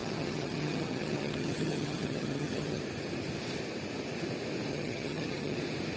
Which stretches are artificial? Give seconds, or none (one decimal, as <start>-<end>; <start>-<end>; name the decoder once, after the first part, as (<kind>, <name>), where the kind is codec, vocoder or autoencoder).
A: 0.0-2.8 (vocoder, HiFi-GAN); 4.7-5.6